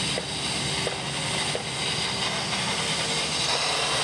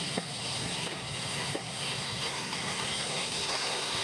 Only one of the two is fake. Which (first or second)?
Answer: second